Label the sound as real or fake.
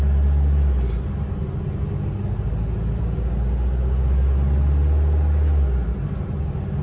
real